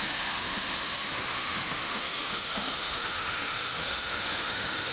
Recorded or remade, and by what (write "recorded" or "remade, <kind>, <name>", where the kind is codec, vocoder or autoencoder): remade, autoencoder, DAC-VAE